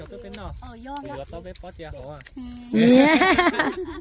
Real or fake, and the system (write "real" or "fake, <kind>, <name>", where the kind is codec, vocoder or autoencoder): real